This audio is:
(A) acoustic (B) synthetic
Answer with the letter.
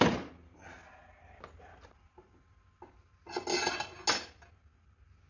A